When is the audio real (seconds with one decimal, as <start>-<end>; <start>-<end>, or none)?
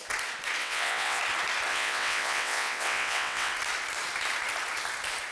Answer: 0.0-0.6; 1.2-1.7; 3.5-5.3